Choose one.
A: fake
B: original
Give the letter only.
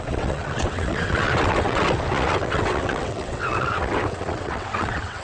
A